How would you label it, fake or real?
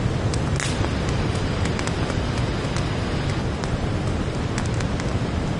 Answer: real